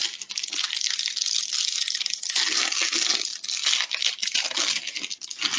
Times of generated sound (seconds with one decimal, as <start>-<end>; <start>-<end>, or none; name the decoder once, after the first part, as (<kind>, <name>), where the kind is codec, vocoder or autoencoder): none